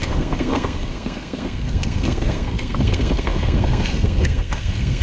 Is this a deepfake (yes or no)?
yes